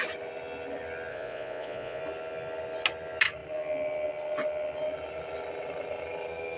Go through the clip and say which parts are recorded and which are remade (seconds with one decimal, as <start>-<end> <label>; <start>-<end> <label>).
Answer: 0.0-1.1 recorded; 1.1-2.0 remade; 2.0-6.6 recorded